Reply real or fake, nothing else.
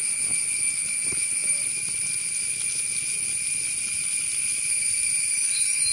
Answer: real